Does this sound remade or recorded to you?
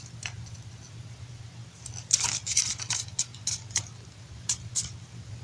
recorded